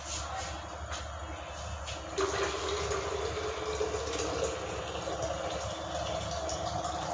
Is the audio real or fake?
real